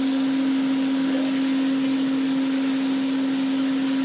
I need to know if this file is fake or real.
real